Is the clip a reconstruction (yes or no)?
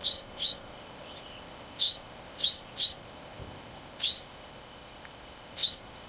yes